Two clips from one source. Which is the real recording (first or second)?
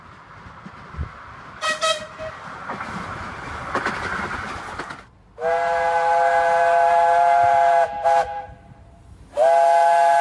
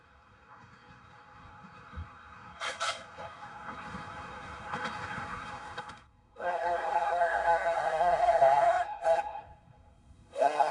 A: first